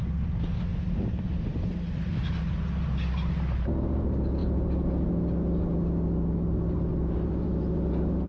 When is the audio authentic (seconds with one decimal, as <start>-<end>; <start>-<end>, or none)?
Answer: 0.0-0.7; 1.7-8.3